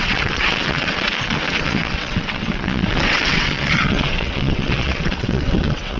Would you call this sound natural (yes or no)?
no